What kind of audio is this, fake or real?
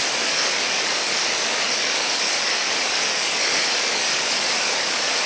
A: fake